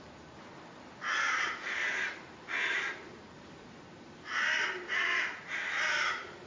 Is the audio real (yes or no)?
yes